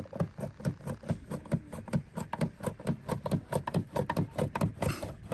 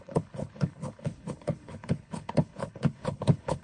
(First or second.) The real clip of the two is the first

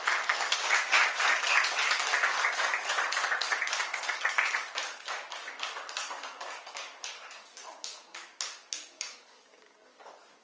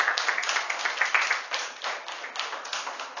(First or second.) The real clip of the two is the second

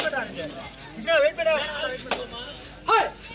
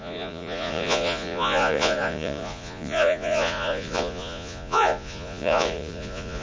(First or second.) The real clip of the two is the first